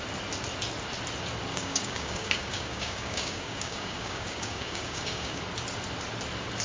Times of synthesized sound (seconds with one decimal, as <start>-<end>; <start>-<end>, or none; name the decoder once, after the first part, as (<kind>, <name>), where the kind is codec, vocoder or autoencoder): 1.5-5.4 (codec, DAC)